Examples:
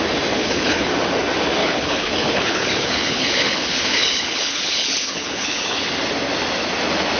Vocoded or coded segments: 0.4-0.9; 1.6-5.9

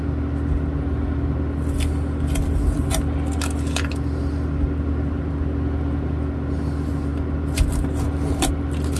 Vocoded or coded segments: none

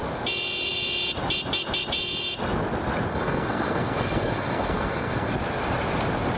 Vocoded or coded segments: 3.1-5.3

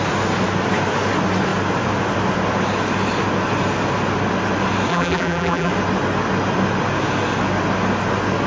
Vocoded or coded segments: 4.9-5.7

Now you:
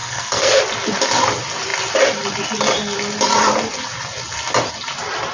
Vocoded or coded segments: 0.0-0.6

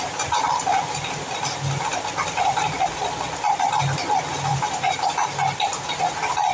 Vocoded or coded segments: 4.5-5.1

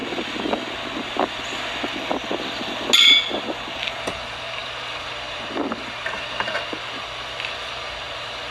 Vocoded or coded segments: none

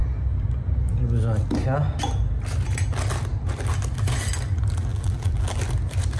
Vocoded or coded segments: 4.9-5.6